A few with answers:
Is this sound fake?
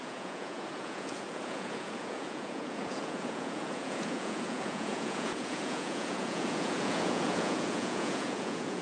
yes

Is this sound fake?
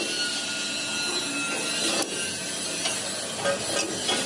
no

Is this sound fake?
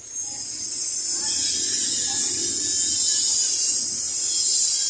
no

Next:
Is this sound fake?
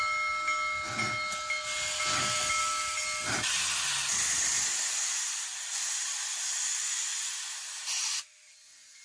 no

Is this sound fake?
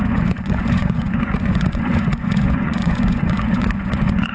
yes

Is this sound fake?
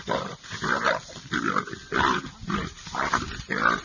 no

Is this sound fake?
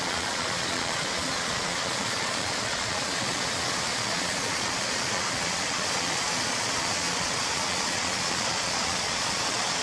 yes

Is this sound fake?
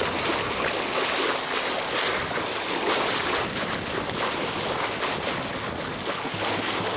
no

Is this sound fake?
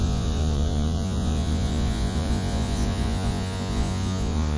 yes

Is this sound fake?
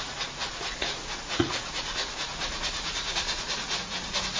yes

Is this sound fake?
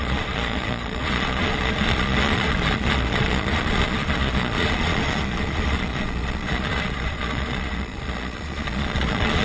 yes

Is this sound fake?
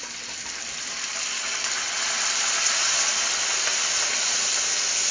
no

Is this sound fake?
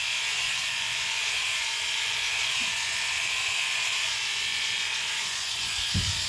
yes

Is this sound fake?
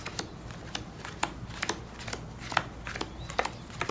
no